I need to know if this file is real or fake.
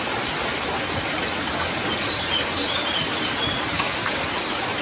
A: real